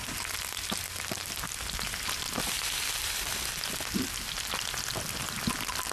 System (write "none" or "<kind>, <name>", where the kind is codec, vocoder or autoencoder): none